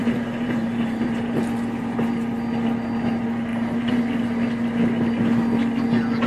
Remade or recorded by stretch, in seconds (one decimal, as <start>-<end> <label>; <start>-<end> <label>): 0.0-1.4 remade; 1.4-3.5 recorded; 3.5-4.0 remade; 4.0-6.3 recorded